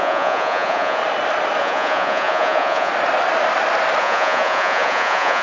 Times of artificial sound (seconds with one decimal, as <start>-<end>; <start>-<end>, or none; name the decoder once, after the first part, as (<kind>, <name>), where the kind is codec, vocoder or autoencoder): 0.0-1.0 (vocoder, Vocos); 1.6-2.9; 4.0-5.4

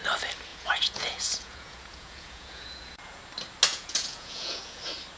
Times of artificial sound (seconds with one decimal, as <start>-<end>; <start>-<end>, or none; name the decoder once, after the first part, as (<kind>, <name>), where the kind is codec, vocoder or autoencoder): 0.5-3.2 (vocoder, Vocos); 3.7-4.8